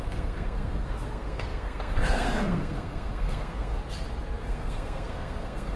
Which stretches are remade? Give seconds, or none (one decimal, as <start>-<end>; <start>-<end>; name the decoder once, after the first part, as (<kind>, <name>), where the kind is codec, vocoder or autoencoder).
0.0-3.8 (codec, SNAC); 4.4-5.8